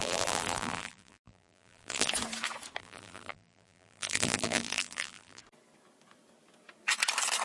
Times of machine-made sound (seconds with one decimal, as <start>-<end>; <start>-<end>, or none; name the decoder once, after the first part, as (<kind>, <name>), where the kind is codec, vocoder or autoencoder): 0.0-2.1 (vocoder, BigVGAN v2); 2.8-5.4